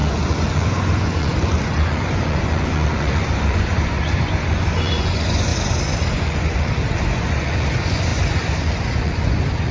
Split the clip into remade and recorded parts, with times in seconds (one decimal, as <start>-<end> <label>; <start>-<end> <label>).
0.0-5.5 remade; 5.5-6.1 recorded; 6.1-9.7 remade